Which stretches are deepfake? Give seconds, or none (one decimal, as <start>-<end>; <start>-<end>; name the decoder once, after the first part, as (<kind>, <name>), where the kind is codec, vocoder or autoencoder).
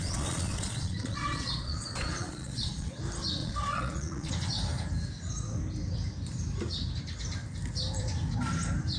0.0-3.0 (vocoder, Vocos); 3.4-4.3